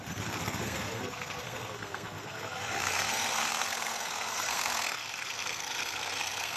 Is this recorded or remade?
remade